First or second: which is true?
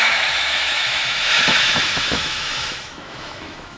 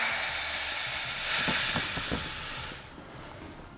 second